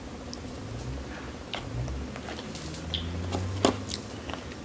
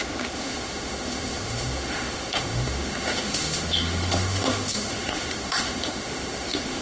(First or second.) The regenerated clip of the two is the second